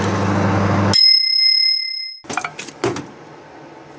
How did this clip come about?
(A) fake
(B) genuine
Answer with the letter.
B